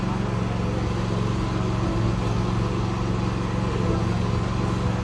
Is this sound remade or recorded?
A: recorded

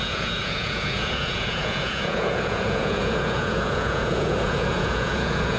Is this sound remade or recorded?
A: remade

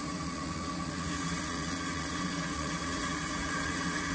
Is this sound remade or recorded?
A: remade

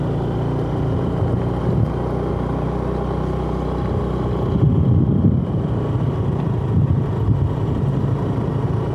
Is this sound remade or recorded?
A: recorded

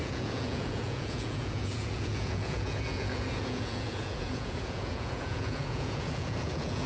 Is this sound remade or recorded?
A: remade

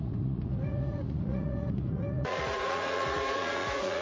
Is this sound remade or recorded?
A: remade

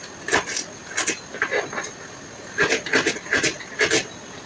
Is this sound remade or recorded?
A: recorded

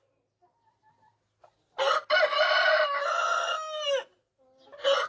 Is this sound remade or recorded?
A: recorded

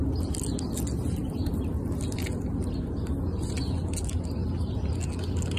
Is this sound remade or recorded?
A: recorded